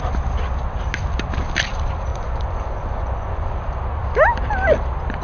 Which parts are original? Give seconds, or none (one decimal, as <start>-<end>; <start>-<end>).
0.0-2.1; 3.6-5.2